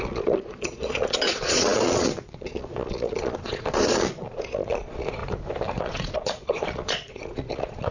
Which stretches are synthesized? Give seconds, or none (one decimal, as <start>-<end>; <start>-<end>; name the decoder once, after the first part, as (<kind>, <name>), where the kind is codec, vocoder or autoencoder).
0.0-5.2 (vocoder, Vocos); 5.8-7.9